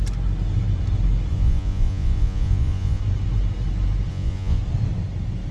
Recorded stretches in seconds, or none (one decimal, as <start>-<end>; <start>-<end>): 0.0-1.3; 3.0-4.1; 4.6-5.5